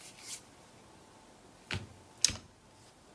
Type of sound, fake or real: real